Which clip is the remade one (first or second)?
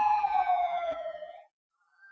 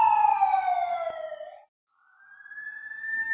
first